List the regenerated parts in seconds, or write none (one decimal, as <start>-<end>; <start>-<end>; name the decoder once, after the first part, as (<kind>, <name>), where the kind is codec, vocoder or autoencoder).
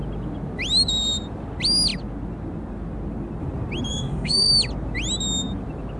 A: 3.9-4.5 (autoencoder, DAC-VAE)